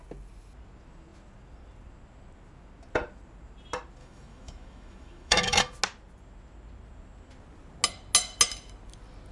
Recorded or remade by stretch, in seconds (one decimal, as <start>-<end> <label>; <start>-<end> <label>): 0.0-4.0 recorded; 4.0-5.6 remade; 5.6-9.3 recorded